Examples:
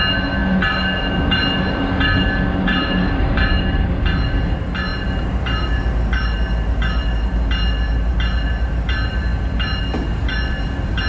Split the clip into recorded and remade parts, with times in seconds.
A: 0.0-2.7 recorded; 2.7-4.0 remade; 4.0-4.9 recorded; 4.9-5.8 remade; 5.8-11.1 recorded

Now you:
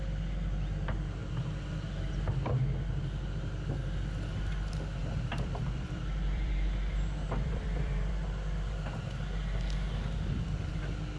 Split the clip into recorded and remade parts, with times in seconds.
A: 0.0-5.0 recorded; 5.0-8.1 remade; 8.1-11.2 recorded

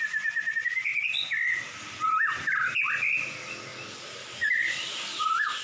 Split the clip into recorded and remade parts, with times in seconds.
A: 0.0-0.9 recorded; 0.9-1.6 remade; 1.6-3.7 recorded; 3.7-4.9 remade; 4.9-5.6 recorded

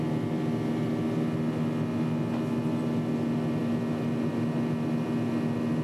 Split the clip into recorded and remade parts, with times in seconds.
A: 0.0-5.8 recorded